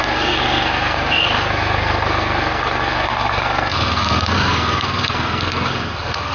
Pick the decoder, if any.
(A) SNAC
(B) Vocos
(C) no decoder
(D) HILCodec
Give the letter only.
A